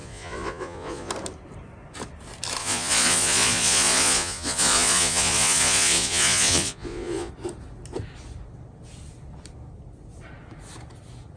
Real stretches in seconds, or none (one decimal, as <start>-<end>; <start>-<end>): 1.1-2.6; 7.3-11.4